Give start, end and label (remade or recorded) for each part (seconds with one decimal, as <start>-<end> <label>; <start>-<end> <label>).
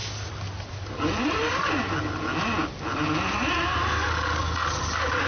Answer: 0.0-0.7 recorded; 0.7-1.6 remade; 1.6-4.8 recorded; 4.8-5.3 remade